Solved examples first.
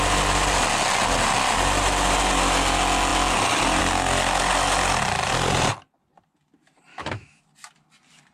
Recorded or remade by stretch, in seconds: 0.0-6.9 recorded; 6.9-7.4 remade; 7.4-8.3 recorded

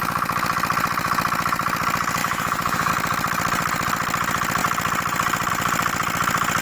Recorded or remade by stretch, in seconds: 0.0-2.2 recorded; 2.2-2.9 remade; 2.9-6.6 recorded

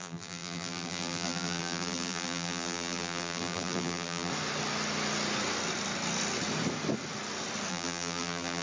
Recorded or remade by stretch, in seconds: 0.0-4.3 remade; 4.3-7.7 recorded; 7.7-8.6 remade

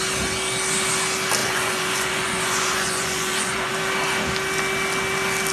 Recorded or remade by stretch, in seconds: 0.0-1.4 recorded; 1.4-3.7 remade; 3.7-5.5 recorded

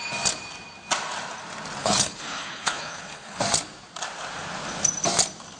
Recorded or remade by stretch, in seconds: 0.0-1.8 recorded; 1.8-3.4 remade; 3.4-5.6 recorded